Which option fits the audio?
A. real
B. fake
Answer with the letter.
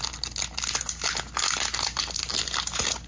A